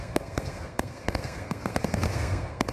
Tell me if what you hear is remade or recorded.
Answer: remade